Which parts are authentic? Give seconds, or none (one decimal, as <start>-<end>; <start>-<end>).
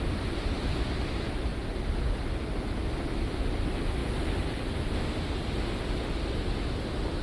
0.0-7.2